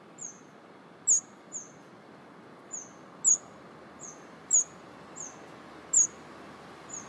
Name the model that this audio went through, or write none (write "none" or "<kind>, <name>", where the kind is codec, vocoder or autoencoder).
none